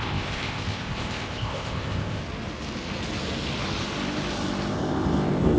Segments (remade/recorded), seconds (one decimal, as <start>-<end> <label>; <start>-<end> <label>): 0.0-2.2 remade; 2.2-4.7 recorded; 4.7-5.6 remade